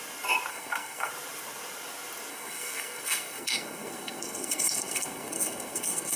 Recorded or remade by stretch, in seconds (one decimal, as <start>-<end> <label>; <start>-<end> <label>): 0.0-0.5 recorded; 0.5-1.1 remade; 1.1-2.3 recorded; 2.3-6.2 remade